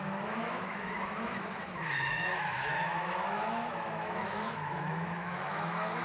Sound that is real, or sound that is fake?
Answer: fake